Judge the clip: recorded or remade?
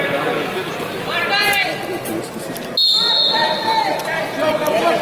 recorded